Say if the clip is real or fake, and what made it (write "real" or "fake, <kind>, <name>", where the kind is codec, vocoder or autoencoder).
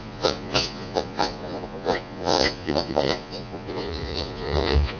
fake, vocoder, Vocos